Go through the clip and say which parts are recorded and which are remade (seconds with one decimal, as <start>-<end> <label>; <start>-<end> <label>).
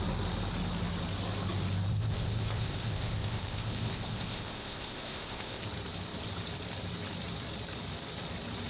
0.0-1.9 recorded; 1.9-5.6 remade; 5.6-8.7 recorded